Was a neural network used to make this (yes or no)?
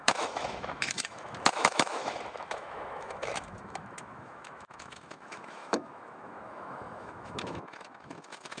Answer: yes